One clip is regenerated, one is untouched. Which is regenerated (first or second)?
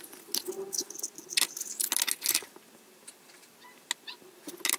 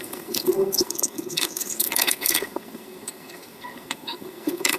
second